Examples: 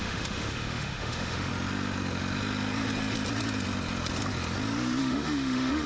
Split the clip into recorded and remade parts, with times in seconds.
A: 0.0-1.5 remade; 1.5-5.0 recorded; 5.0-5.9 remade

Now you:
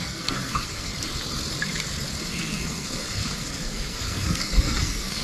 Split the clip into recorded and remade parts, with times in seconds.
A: 0.0-0.9 remade; 0.9-2.2 recorded; 2.2-5.2 remade